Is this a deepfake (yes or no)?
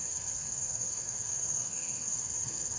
yes